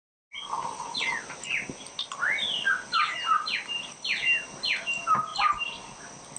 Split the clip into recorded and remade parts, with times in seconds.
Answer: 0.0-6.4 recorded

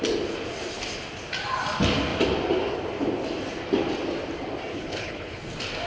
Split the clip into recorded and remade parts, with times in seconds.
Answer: 0.0-4.7 recorded; 4.7-5.4 remade; 5.4-5.9 recorded